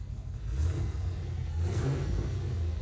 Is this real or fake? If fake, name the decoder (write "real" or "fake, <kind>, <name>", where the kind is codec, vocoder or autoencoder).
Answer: fake, codec, SNAC